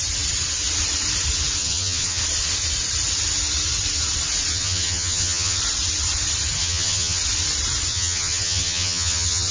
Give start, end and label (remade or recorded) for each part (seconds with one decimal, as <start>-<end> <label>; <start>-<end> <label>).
0.0-1.6 recorded; 1.6-2.2 remade; 2.2-4.5 recorded; 4.5-5.6 remade; 5.6-6.6 recorded; 6.6-7.2 remade; 7.2-7.9 recorded; 7.9-9.5 remade

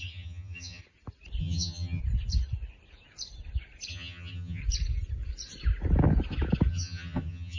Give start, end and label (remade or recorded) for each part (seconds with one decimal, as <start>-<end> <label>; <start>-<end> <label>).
0.0-0.8 remade; 0.8-1.4 recorded; 1.4-2.0 remade; 2.0-3.9 recorded; 3.9-4.6 remade; 4.6-6.7 recorded; 6.7-7.6 remade

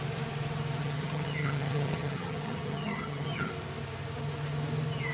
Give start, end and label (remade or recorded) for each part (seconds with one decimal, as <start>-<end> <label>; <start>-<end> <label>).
0.0-0.8 recorded; 0.8-3.5 remade; 3.5-5.1 recorded

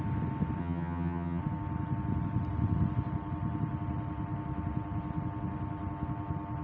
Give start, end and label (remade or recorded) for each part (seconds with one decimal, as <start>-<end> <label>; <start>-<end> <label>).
0.0-0.6 recorded; 0.6-1.4 remade; 1.4-6.6 recorded

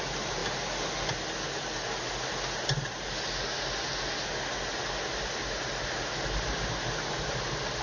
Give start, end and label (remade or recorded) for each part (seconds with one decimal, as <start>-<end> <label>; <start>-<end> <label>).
0.0-7.8 recorded

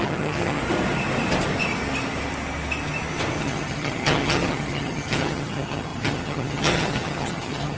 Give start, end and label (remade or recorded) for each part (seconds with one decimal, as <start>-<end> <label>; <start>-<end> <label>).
0.0-0.6 remade; 0.6-3.4 recorded; 3.4-7.8 remade

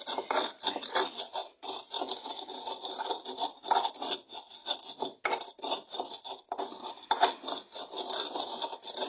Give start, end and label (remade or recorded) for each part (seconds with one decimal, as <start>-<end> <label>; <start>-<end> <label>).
0.0-9.1 recorded

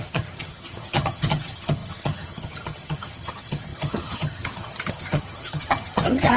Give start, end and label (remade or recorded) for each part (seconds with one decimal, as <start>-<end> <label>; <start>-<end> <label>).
0.0-6.4 remade